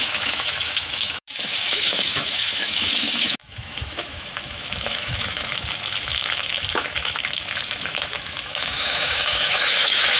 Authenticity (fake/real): fake